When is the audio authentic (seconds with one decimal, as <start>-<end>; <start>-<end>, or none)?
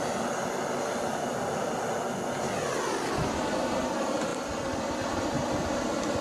0.0-6.2